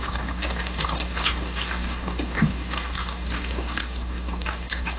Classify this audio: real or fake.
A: fake